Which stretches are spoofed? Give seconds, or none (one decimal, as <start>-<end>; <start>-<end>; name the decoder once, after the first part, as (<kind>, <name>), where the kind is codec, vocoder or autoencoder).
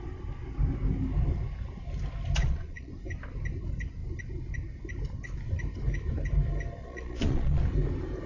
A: 2.4-2.9 (vocoder, Vocos); 6.8-7.6